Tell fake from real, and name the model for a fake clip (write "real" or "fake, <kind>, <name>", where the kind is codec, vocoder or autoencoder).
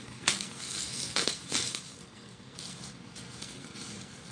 fake, codec, SNAC